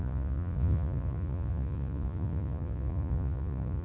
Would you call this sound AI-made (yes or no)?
yes